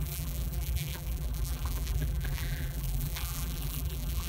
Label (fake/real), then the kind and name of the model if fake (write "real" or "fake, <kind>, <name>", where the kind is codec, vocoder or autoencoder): fake, vocoder, BigVGAN v2